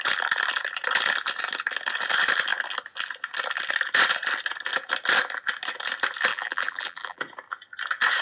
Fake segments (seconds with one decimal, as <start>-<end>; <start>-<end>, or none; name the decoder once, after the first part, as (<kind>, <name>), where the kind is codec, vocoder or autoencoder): 6.3-7.2 (vocoder, BigVGAN v2)